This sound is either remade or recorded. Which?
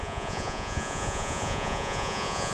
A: remade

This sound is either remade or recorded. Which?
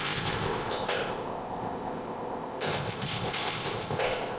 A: remade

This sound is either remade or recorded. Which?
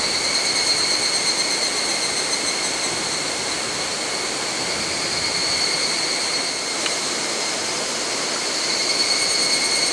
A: recorded